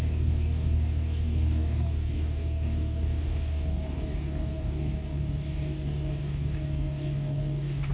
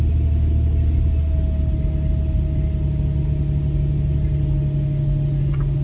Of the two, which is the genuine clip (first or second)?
second